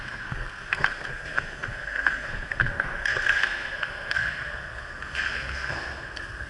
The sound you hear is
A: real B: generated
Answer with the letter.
B